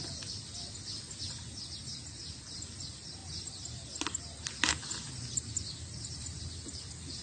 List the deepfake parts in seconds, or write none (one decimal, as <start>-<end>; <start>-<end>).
none